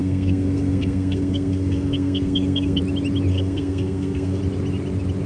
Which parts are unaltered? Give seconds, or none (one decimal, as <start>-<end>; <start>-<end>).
2.8-3.3; 4.4-5.3